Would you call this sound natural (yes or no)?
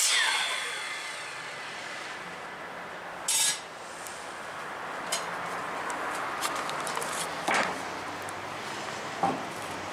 yes